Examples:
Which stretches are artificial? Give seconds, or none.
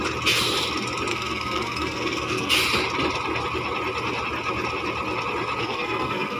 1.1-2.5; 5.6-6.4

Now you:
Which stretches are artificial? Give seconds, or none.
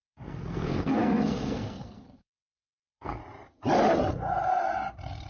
0.0-3.2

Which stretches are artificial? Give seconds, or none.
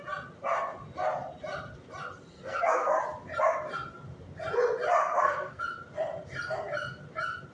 2.3-3.0; 5.0-5.6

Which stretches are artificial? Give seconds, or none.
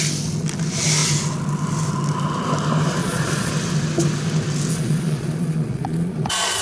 3.0-3.5; 4.7-6.6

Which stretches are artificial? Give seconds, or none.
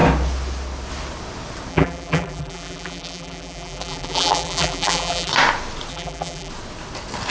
1.7-5.3; 5.9-6.5